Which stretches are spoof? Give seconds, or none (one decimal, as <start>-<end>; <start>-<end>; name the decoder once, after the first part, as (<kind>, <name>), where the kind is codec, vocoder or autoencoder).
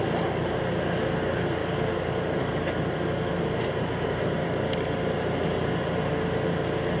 none